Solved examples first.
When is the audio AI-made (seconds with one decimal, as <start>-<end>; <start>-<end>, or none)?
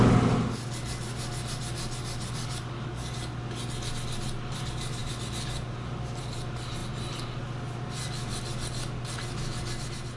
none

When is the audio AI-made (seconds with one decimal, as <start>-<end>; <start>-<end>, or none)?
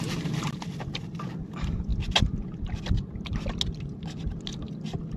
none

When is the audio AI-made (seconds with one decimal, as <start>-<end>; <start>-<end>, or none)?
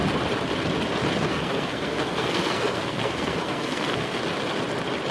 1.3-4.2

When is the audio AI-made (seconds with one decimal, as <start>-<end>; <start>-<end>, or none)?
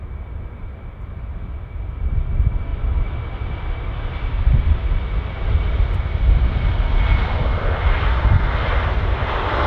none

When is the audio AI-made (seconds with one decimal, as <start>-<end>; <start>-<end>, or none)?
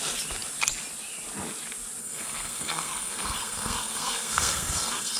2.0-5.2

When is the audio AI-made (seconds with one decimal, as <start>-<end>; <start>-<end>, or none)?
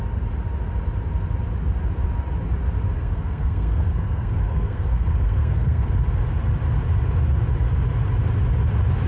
3.0-5.9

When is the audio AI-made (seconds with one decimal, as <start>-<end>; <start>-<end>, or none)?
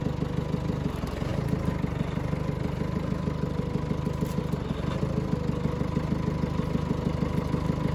none